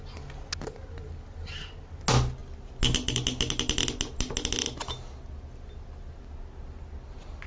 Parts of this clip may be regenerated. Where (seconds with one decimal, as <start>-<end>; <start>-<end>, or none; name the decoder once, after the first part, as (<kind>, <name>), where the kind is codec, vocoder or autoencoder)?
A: none